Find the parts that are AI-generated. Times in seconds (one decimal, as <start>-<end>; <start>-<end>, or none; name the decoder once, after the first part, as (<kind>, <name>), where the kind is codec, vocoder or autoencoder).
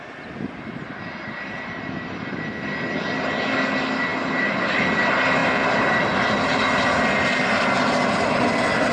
5.4-6.0 (vocoder, BigVGAN v2)